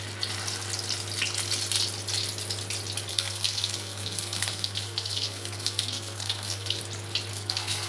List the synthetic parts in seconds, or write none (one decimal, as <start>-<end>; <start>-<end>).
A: 3.1-6.8; 7.3-7.9